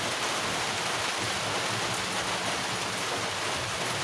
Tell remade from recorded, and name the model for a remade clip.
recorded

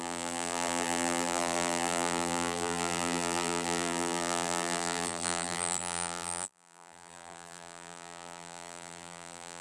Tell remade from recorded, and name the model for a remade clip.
remade, vocoder, BigVGAN v2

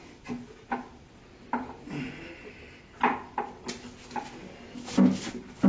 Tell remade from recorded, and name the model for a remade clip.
recorded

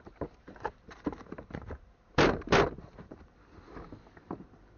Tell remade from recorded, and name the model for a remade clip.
remade, vocoder, BigVGAN v2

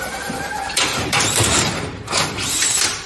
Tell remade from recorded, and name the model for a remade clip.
remade, vocoder, BigVGAN v2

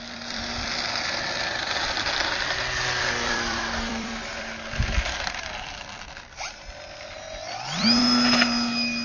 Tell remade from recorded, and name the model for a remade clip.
remade, vocoder, BigVGAN v2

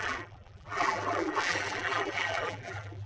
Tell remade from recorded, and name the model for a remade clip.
remade, vocoder, BigVGAN v2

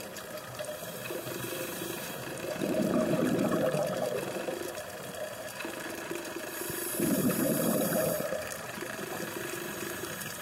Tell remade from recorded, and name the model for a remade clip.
remade, vocoder, BigVGAN v2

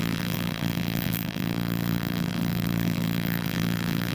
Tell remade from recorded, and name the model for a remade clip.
remade, vocoder, BigVGAN v2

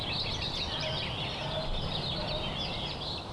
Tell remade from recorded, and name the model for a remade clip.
remade, vocoder, BigVGAN v2